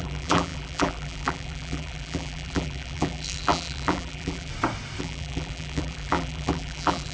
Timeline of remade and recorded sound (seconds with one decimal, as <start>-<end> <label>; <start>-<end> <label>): 0.0-4.5 remade; 4.5-5.0 recorded; 5.0-7.1 remade